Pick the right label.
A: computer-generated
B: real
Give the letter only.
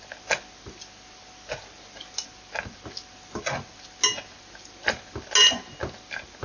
B